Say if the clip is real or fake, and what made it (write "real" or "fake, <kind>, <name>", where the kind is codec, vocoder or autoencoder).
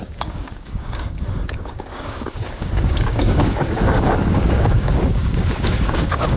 fake, codec, DAC